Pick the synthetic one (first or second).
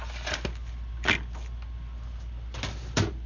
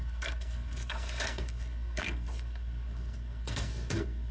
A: second